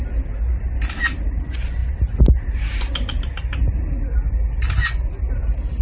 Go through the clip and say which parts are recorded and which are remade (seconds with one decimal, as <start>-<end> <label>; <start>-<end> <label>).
0.0-5.8 recorded